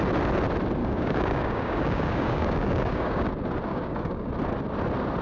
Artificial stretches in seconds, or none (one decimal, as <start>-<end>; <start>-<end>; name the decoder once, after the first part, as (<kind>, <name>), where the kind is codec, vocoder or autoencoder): 0.8-3.3 (codec, DAC); 3.7-4.3